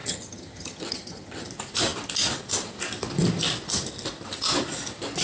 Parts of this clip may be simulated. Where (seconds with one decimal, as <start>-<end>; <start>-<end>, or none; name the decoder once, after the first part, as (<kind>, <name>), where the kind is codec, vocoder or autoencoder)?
0.0-1.5 (vocoder, HiFi-GAN)